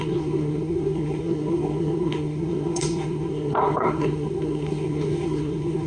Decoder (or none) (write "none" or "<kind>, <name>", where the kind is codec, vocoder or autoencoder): codec, SNAC